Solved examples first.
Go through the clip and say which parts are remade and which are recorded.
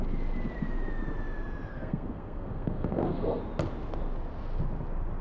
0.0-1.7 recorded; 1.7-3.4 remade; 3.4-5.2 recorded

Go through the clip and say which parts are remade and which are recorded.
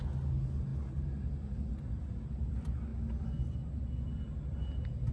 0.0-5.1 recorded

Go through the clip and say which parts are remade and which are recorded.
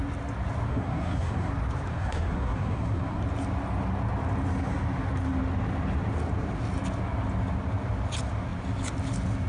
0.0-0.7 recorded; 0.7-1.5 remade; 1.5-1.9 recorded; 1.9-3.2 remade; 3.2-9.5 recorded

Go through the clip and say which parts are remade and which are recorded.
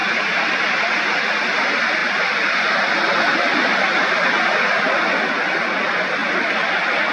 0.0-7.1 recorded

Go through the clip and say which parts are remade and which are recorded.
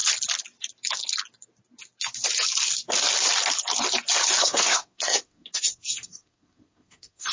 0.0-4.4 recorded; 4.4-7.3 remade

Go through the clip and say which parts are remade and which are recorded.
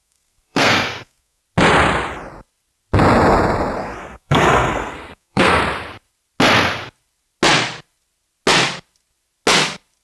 0.0-1.4 remade; 1.4-3.8 recorded; 3.8-5.6 remade; 5.6-10.0 recorded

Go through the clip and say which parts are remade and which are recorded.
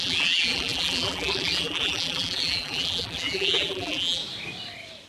0.0-4.2 remade; 4.2-5.1 recorded